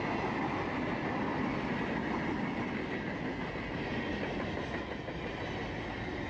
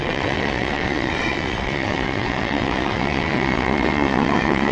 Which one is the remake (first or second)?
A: second